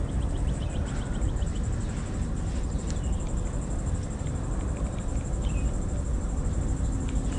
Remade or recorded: recorded